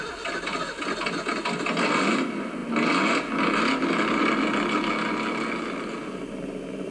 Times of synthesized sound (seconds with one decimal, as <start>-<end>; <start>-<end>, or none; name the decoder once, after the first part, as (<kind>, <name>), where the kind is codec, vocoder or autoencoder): none